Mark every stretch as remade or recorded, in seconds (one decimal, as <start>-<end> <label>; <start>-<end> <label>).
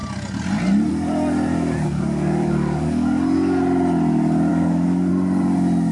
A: 0.0-1.5 recorded; 1.5-3.2 remade; 3.2-4.5 recorded; 4.5-5.1 remade; 5.1-5.9 recorded